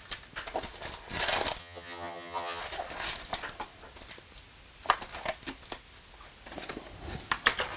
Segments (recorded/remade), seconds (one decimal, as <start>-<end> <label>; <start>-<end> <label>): 0.0-1.6 recorded; 1.6-2.6 remade; 2.6-7.8 recorded